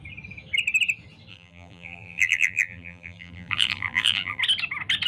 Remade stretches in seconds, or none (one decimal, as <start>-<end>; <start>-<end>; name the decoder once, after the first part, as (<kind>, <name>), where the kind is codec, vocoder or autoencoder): 1.3-4.4 (vocoder, BigVGAN v2)